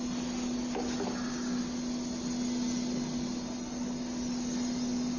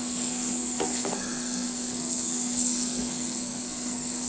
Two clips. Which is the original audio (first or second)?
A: first